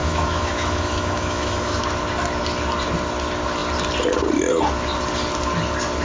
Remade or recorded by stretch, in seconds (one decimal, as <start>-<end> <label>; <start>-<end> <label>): 0.0-1.8 remade; 1.8-6.0 recorded